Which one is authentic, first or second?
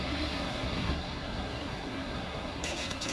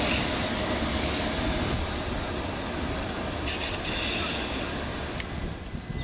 second